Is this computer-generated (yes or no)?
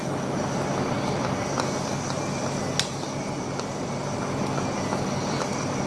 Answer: no